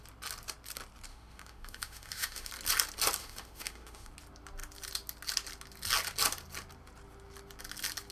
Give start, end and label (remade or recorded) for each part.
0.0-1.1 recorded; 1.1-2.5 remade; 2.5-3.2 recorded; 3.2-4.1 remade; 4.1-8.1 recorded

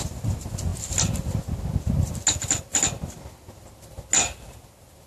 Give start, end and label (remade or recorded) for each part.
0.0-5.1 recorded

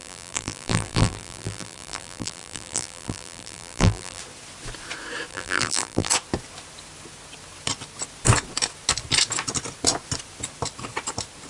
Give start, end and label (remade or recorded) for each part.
0.0-4.2 remade; 4.2-5.3 recorded; 5.3-6.1 remade; 6.1-11.5 recorded

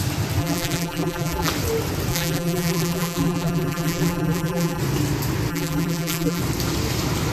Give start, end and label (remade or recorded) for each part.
0.0-0.4 recorded; 0.4-1.5 remade; 1.5-2.1 recorded; 2.1-4.8 remade; 4.8-5.5 recorded; 5.5-6.4 remade; 6.4-7.3 recorded

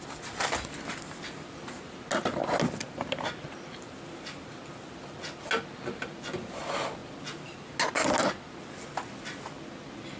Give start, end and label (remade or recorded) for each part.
0.0-10.2 recorded